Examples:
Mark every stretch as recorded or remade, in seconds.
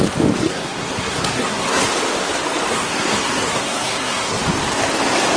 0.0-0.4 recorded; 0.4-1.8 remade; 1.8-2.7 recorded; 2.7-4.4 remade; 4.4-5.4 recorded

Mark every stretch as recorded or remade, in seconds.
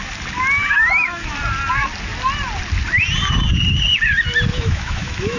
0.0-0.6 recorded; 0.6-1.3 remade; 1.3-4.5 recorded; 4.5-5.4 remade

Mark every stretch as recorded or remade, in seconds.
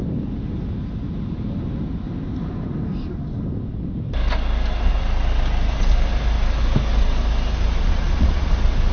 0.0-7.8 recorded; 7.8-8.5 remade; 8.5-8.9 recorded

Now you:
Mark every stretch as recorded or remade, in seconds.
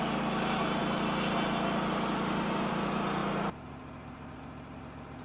0.0-3.2 recorded; 3.2-4.8 remade; 4.8-5.2 recorded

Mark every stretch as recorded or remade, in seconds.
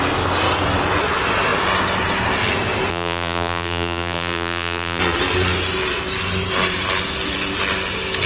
0.0-2.9 recorded; 2.9-5.0 remade; 5.0-8.3 recorded